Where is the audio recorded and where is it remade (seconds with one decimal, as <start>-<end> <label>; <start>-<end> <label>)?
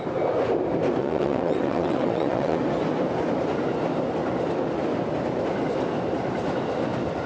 0.0-1.0 recorded; 1.0-2.6 remade; 2.6-7.3 recorded